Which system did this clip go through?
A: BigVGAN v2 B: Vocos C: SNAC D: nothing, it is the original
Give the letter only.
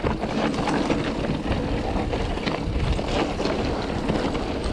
D